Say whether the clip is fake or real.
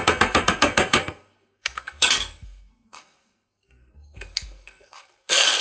fake